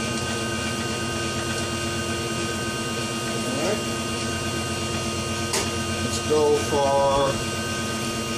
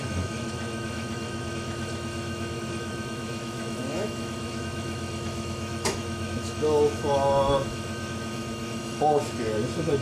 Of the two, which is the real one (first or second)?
first